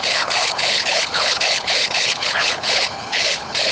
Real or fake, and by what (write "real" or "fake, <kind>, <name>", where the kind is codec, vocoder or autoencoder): fake, codec, HILCodec